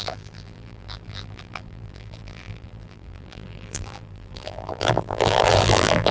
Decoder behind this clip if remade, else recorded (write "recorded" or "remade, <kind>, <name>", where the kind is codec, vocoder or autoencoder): remade, vocoder, BigVGAN v2